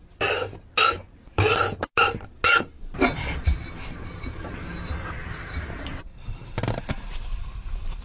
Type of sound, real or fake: real